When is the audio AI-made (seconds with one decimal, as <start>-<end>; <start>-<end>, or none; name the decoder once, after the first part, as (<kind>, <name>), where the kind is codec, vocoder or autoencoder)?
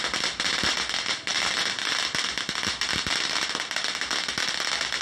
none